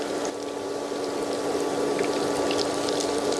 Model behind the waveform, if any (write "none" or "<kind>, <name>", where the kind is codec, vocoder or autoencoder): none